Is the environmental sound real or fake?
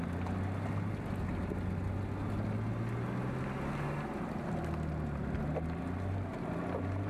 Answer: real